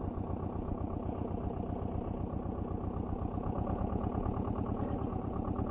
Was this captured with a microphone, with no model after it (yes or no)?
yes